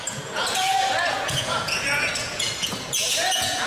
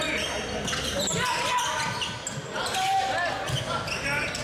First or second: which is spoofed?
first